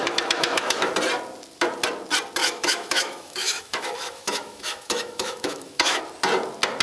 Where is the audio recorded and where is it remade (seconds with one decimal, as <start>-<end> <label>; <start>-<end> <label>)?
0.0-0.9 remade; 0.9-2.4 recorded; 2.4-6.0 remade; 6.0-6.8 recorded